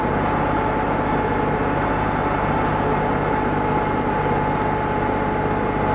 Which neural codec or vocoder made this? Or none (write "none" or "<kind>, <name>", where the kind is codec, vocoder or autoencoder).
none